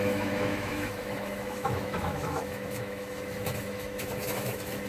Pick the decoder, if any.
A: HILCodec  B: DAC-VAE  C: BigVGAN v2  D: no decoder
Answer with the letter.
B